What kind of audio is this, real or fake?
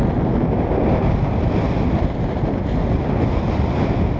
real